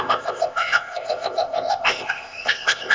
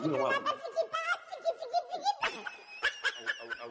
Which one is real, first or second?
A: second